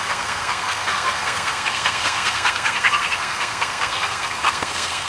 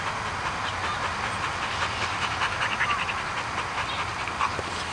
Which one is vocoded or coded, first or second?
first